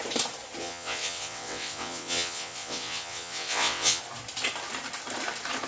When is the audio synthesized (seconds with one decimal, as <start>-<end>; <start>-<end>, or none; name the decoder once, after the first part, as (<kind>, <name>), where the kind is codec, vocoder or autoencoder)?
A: 0.6-4.0 (vocoder, WaveNeXt)